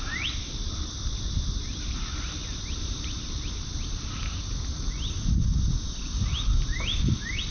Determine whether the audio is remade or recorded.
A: recorded